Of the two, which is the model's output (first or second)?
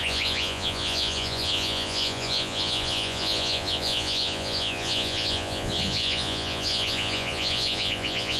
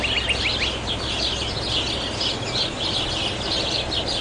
first